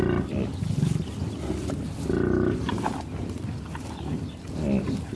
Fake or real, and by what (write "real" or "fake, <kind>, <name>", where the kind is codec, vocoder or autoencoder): real